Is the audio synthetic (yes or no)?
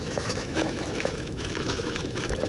yes